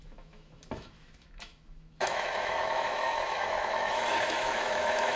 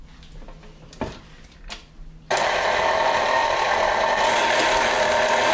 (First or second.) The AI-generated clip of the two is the first